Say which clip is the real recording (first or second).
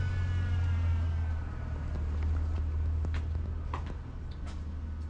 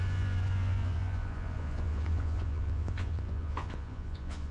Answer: first